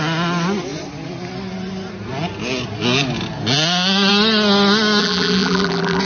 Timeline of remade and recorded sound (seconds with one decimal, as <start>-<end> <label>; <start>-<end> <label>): 0.0-5.0 recorded; 5.0-6.0 remade